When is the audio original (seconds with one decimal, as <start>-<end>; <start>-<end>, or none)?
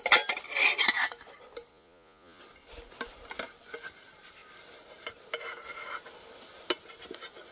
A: 0.0-1.7; 2.4-7.5